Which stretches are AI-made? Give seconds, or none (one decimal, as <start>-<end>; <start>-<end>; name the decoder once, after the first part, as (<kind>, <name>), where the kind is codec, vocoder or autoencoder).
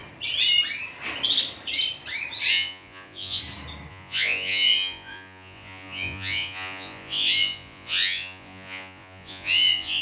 2.5-3.4 (vocoder, Vocos); 3.9-10.0